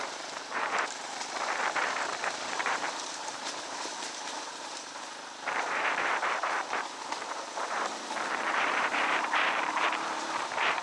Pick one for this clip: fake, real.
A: fake